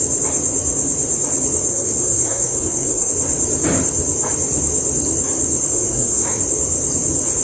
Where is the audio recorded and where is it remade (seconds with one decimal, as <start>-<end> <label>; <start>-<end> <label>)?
0.0-1.7 recorded; 1.7-3.1 remade; 3.1-5.7 recorded; 5.7-6.4 remade; 6.4-7.4 recorded